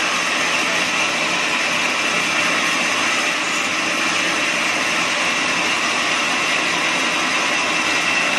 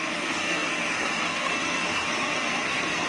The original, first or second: first